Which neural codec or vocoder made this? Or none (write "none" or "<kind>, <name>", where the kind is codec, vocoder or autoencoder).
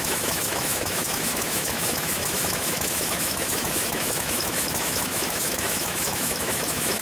autoencoder, DAC-VAE